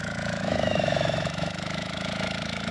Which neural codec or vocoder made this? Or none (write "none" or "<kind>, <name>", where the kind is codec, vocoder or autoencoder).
autoencoder, DAC-VAE